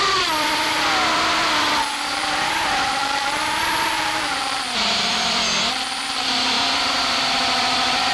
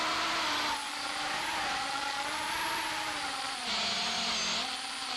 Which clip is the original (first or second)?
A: second